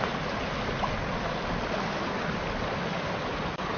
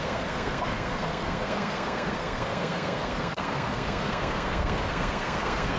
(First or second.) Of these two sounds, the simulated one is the second